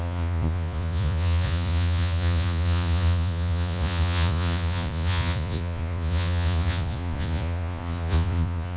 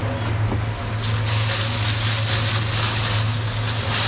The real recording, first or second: second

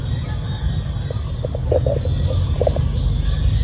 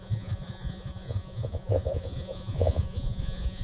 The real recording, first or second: first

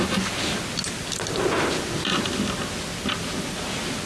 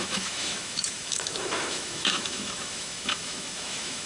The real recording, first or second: first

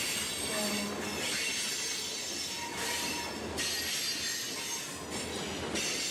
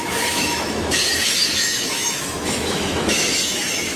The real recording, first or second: first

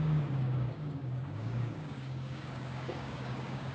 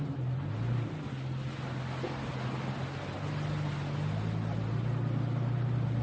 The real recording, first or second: second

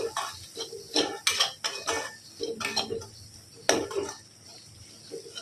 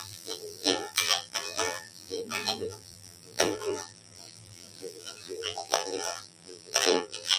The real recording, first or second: first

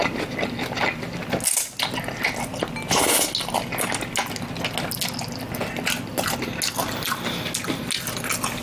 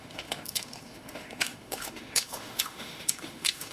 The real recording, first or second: first